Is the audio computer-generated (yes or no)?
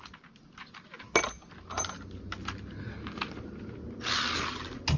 no